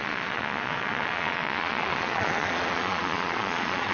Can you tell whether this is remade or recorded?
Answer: remade